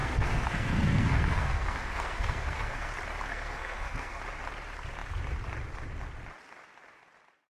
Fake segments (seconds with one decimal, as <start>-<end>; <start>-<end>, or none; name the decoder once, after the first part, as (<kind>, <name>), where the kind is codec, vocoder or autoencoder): 0.0-2.9 (codec, SNAC); 3.3-4.2